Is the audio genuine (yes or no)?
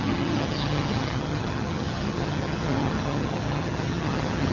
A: no